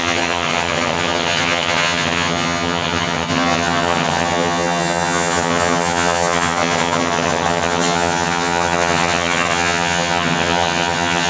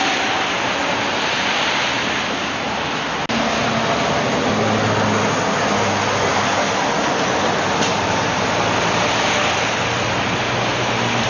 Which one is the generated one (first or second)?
first